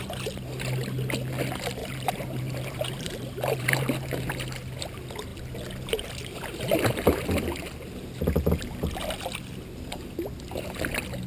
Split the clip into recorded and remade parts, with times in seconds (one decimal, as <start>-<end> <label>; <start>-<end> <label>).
0.0-1.8 recorded; 1.8-4.3 remade; 4.3-11.3 recorded